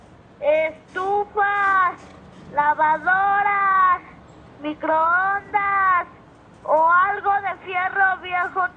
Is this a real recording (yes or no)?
yes